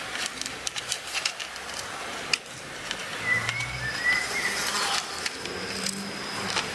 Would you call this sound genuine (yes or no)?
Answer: yes